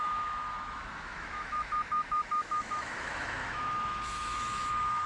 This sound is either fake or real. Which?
fake